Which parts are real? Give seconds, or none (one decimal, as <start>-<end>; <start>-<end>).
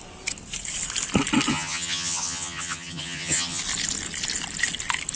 0.0-1.5; 3.6-5.2